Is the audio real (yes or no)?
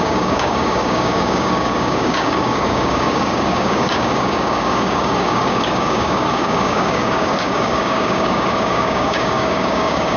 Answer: no